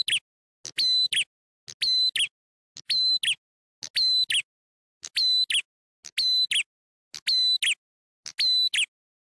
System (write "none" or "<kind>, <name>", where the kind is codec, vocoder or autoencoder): none